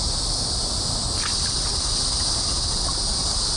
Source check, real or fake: real